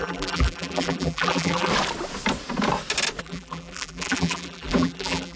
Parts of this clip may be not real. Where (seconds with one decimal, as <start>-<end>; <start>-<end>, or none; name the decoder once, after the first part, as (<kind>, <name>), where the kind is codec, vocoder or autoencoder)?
0.0-1.7 (vocoder, BigVGAN v2); 3.2-5.4